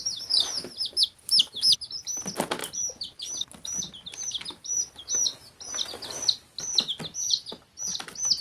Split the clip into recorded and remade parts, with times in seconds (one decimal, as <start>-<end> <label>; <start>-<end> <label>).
0.0-8.4 recorded